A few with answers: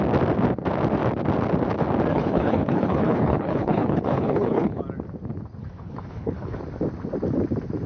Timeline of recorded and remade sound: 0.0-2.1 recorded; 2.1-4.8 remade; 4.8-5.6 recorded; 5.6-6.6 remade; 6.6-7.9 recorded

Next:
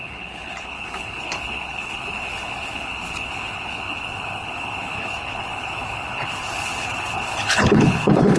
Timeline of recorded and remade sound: 0.0-8.4 remade

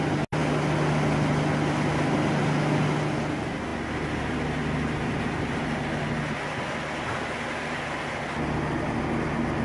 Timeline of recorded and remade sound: 0.0-9.6 recorded

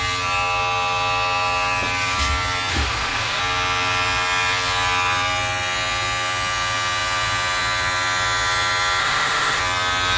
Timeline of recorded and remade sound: 0.0-2.7 recorded; 2.7-3.4 remade; 3.4-9.0 recorded; 9.0-9.6 remade; 9.6-10.2 recorded

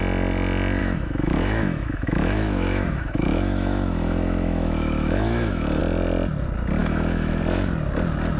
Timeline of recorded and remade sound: 0.0-0.8 recorded; 0.8-5.8 remade; 5.8-6.8 recorded; 6.8-7.4 remade; 7.4-8.4 recorded

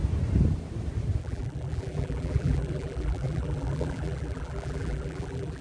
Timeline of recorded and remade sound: 0.0-1.2 recorded; 1.2-5.6 remade

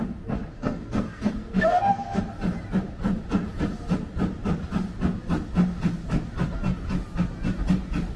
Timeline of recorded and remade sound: 0.0-0.5 recorded; 0.5-2.2 remade; 2.2-8.2 recorded